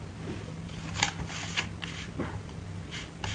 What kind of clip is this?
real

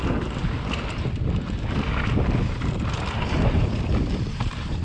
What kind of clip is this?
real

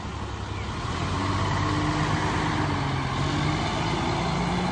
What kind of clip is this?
real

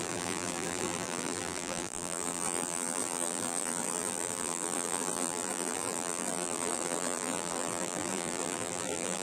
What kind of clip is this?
fake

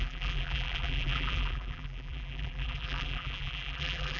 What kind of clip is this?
fake